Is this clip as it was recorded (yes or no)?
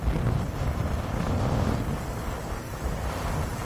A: yes